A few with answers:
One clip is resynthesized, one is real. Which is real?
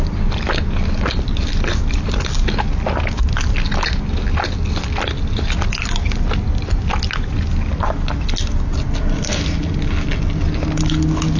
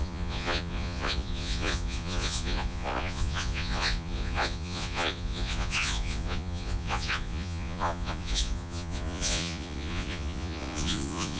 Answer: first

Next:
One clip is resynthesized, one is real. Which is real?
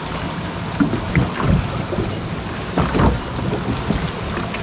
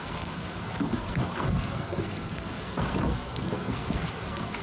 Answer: first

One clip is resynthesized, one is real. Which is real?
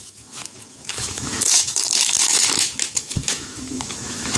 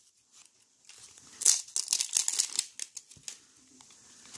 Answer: second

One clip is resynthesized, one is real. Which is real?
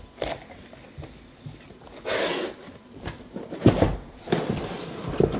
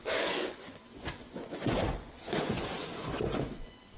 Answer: first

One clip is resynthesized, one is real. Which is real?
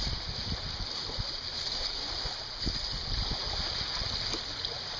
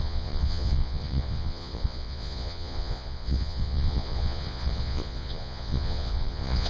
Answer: first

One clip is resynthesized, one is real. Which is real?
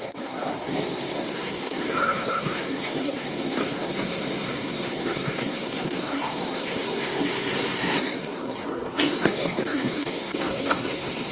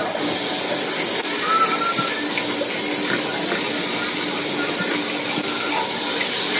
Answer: second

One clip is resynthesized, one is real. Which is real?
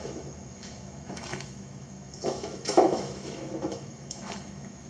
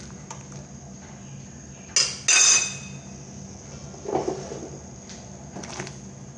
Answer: second